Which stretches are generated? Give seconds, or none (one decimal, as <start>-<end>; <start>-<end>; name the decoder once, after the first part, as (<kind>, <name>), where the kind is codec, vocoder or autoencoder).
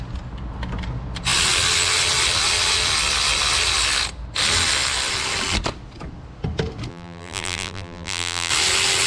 6.9-8.5 (vocoder, BigVGAN v2)